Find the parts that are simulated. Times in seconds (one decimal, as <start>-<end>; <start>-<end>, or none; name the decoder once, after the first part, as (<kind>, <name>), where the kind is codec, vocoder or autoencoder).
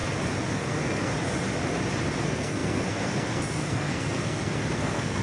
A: 0.5-1.1 (codec, SNAC); 2.2-5.2